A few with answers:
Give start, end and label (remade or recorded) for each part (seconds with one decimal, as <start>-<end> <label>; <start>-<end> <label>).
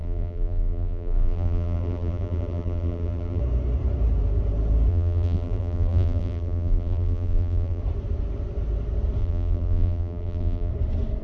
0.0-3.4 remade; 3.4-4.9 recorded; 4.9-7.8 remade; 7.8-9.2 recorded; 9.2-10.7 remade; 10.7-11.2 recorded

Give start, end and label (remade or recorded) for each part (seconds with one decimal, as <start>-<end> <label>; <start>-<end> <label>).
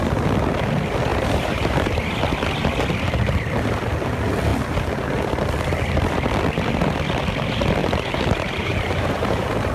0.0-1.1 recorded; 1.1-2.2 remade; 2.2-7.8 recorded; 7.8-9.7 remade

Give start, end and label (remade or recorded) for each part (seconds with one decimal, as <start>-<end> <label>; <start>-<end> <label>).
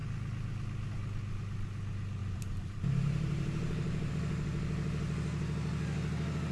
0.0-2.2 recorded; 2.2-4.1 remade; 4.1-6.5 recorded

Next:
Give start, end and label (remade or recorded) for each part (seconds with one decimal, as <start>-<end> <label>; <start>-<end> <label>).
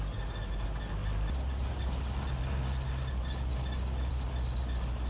0.0-5.1 recorded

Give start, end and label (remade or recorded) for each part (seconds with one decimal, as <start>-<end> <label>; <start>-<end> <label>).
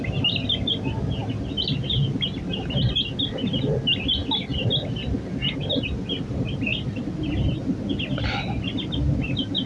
0.0-6.7 recorded; 6.7-7.3 remade; 7.3-9.7 recorded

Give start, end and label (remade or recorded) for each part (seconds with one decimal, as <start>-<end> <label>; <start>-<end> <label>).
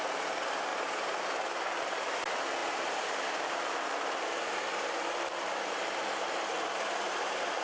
0.0-2.6 recorded; 2.6-7.6 remade